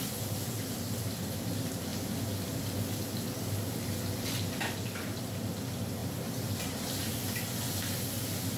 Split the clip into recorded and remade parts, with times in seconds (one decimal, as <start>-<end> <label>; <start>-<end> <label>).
0.0-8.6 recorded